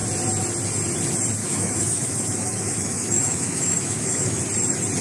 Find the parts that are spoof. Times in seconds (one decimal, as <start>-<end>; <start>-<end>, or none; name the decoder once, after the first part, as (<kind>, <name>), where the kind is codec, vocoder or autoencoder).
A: 1.4-4.4 (autoencoder, DAC-VAE)